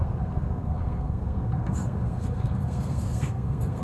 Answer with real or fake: fake